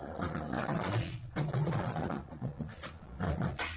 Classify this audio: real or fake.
fake